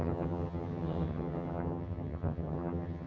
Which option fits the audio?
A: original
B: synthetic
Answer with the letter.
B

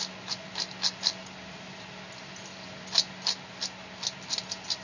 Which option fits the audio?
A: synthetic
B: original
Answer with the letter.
B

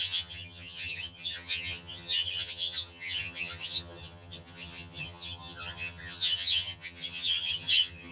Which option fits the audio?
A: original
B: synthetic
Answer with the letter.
B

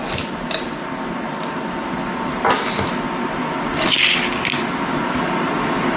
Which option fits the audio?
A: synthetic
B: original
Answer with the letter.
B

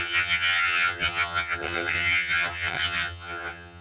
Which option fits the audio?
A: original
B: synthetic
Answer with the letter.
B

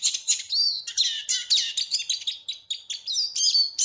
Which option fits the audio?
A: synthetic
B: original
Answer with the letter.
B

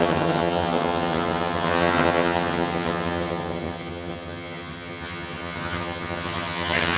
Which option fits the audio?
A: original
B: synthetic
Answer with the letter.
B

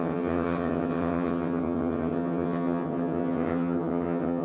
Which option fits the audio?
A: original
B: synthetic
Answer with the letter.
B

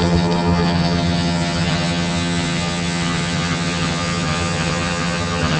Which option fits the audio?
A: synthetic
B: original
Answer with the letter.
A